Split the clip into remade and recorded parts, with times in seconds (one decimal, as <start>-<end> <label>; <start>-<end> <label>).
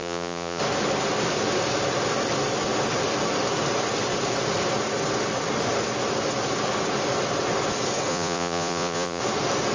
0.0-0.6 remade; 0.6-8.1 recorded; 8.1-9.2 remade; 9.2-9.7 recorded